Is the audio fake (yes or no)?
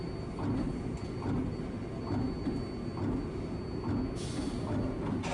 no